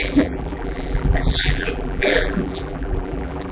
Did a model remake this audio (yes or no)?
yes